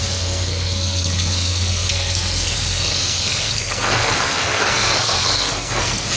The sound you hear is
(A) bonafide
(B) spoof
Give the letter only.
B